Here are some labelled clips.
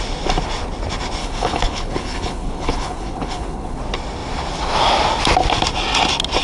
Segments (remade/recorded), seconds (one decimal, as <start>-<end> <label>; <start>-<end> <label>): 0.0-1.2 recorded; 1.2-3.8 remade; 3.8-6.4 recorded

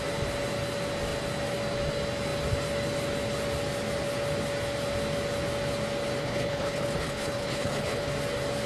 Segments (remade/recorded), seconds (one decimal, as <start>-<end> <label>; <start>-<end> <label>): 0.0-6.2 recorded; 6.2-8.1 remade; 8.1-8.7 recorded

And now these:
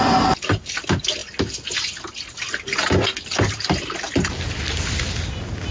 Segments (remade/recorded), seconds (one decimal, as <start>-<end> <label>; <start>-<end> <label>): 0.0-5.7 recorded